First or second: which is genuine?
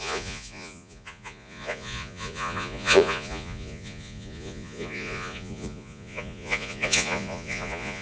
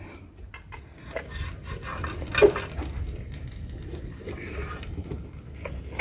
second